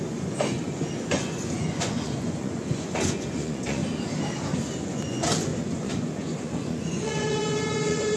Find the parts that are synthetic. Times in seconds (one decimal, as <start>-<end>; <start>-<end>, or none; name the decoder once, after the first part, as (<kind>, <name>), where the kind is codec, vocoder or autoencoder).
0.0-3.8 (vocoder, Vocos); 4.8-8.2